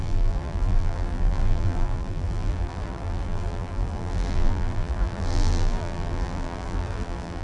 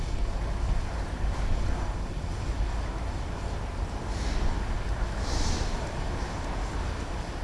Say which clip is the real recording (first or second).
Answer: second